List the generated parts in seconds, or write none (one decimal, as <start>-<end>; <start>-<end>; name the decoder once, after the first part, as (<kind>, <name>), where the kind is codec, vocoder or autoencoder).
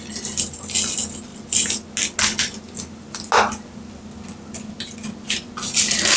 none